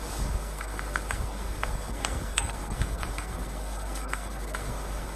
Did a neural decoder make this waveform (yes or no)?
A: yes